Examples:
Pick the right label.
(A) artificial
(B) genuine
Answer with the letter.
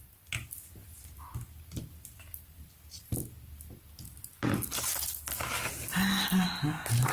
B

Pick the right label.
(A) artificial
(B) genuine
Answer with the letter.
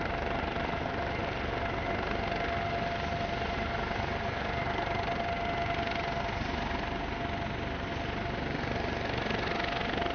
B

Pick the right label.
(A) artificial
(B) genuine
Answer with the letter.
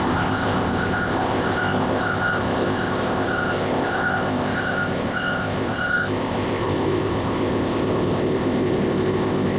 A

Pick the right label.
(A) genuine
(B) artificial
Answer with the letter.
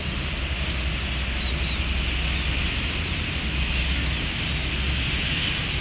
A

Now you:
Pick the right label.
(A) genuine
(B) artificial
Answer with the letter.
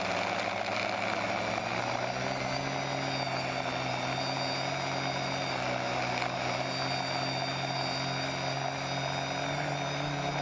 A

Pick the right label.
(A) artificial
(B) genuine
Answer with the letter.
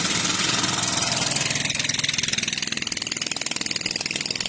B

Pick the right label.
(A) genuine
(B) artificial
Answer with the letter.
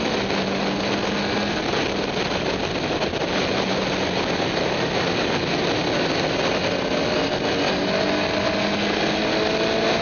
A